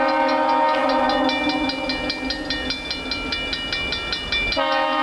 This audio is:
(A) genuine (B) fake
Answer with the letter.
A